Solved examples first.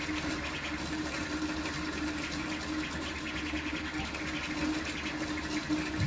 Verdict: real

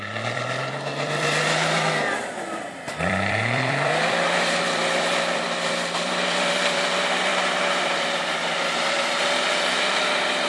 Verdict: fake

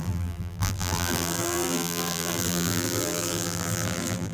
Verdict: fake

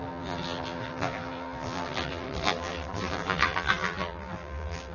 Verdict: fake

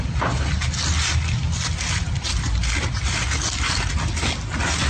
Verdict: real